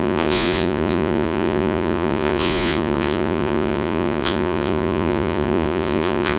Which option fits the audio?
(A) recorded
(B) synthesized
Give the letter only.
B